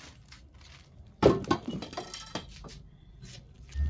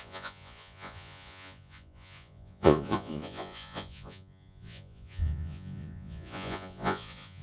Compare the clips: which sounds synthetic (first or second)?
second